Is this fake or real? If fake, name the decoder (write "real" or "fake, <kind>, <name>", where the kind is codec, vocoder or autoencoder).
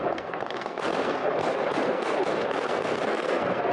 fake, codec, SNAC